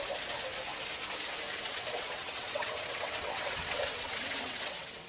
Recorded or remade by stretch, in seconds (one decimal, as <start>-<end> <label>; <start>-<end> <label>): 0.0-1.7 recorded; 1.7-5.1 remade